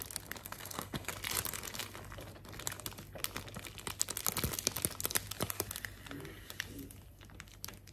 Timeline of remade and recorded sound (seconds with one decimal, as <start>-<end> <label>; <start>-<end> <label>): 0.0-0.4 recorded; 0.4-1.1 remade; 1.1-7.9 recorded